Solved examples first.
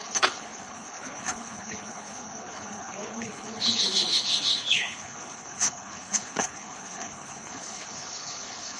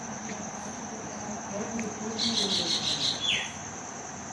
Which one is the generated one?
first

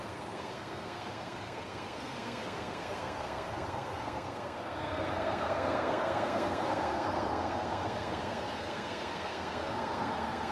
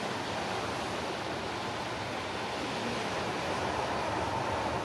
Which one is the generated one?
first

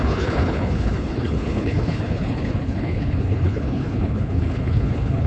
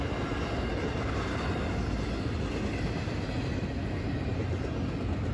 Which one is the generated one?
first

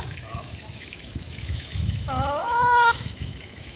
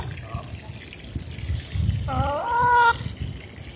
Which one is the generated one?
first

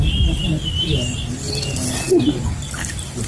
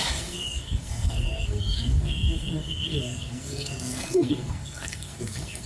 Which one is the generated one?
second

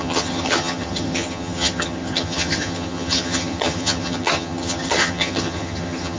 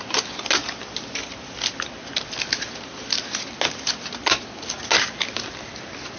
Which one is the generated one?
first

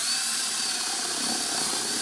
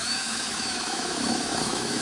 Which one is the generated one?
second